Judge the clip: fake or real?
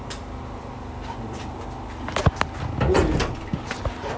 real